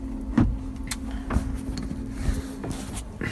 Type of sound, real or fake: real